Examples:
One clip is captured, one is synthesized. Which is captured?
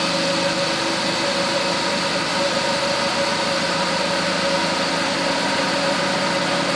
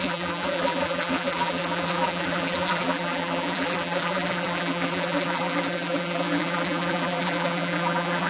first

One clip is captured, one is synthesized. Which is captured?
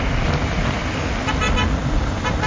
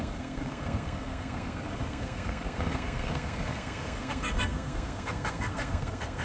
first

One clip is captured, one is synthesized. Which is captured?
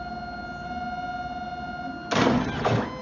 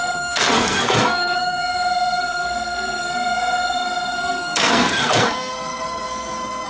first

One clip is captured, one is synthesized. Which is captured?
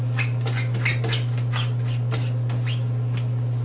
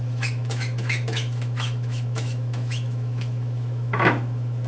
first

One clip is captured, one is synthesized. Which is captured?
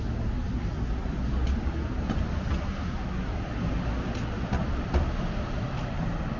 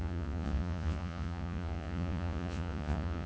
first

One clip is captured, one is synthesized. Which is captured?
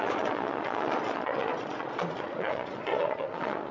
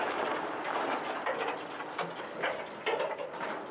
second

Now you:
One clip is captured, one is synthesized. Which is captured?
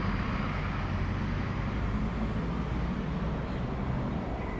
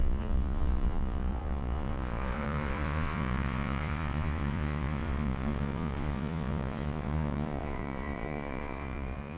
first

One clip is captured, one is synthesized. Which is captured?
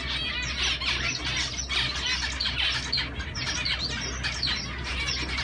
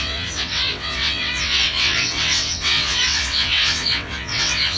first